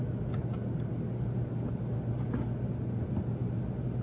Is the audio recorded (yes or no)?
yes